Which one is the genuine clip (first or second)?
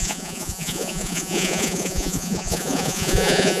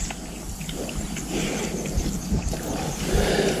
second